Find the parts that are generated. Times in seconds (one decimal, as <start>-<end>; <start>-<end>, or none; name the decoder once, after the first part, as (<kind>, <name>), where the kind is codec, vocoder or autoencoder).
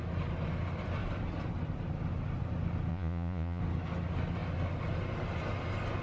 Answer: 2.9-3.6 (vocoder, Vocos)